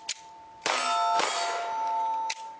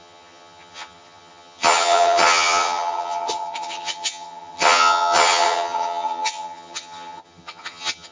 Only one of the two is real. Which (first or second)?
first